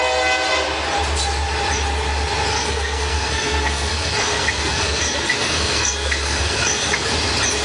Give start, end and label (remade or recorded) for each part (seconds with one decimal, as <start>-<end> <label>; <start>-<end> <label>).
0.0-2.5 recorded; 2.5-7.1 remade; 7.1-7.6 recorded

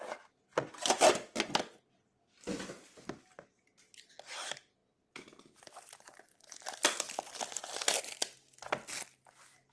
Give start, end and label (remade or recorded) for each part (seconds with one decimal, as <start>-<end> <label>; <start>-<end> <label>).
0.0-9.7 recorded

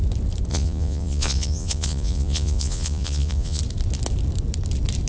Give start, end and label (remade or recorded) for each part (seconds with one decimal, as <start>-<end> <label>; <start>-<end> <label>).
0.0-0.5 recorded; 0.5-3.6 remade; 3.6-5.1 recorded

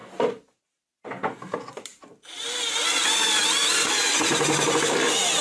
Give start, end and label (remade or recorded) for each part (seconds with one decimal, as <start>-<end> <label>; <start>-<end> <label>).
0.0-5.4 recorded

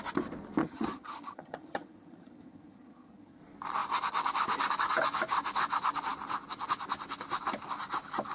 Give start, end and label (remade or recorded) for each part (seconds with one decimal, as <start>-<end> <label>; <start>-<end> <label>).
0.0-0.6 recorded; 0.6-3.4 remade; 3.4-8.3 recorded

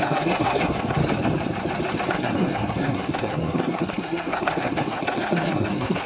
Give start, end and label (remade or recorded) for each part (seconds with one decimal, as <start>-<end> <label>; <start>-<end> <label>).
0.0-1.0 remade; 1.0-2.1 recorded; 2.1-6.1 remade

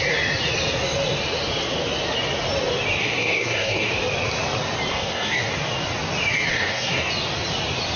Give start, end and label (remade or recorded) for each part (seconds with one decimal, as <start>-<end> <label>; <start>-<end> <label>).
0.0-3.0 recorded; 3.0-3.9 remade; 3.9-4.9 recorded; 4.9-5.5 remade; 5.5-6.5 recorded; 6.5-7.1 remade; 7.1-8.0 recorded

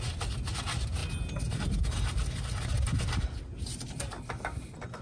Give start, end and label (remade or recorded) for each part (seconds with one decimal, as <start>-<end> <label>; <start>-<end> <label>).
0.0-5.0 recorded